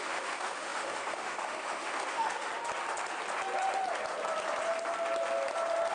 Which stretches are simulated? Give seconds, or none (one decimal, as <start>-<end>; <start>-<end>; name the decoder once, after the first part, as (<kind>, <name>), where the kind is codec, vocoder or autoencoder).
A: 0.0-2.5 (autoencoder, DAC-VAE)